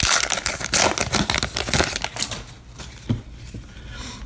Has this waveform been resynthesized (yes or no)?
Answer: no